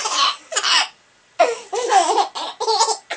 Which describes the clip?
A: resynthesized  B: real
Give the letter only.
B